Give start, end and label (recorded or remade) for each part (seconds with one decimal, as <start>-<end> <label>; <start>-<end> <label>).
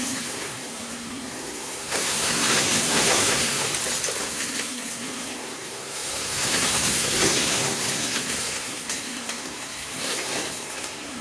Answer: 0.0-3.7 remade; 3.7-4.2 recorded; 4.2-11.2 remade